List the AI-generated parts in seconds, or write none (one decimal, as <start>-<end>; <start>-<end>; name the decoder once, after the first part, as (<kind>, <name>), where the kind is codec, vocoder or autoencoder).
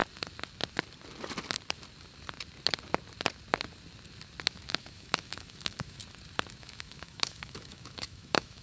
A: 4.7-6.0 (autoencoder, DAC-VAE); 6.6-8.6